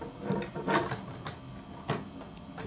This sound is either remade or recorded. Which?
recorded